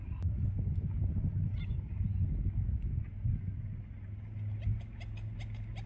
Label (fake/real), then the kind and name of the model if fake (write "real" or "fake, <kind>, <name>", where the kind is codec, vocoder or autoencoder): real